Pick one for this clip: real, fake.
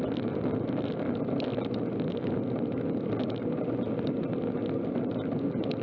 real